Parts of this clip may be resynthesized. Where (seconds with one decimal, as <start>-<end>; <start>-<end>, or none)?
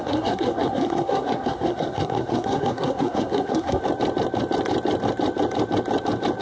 0.0-3.8